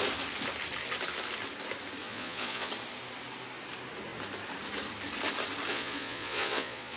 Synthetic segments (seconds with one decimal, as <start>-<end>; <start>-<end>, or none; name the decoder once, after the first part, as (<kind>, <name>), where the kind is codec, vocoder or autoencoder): 2.0-2.7 (vocoder, Vocos); 5.7-7.0